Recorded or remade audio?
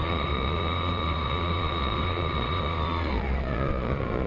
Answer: remade